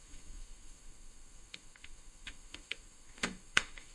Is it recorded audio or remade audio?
remade